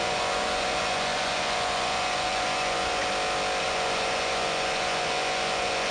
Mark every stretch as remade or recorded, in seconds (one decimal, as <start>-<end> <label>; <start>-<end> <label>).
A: 0.0-3.0 remade; 3.0-3.6 recorded; 3.6-5.9 remade